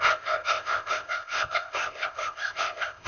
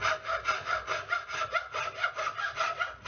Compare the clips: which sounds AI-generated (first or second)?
first